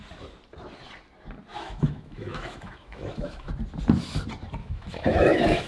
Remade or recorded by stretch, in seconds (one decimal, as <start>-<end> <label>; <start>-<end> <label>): 0.0-1.5 recorded; 1.5-3.5 remade; 3.5-4.6 recorded; 4.6-5.7 remade